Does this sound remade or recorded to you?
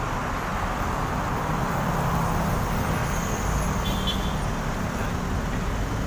recorded